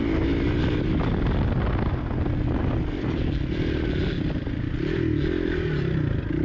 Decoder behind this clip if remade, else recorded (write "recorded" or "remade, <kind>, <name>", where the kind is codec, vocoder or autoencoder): recorded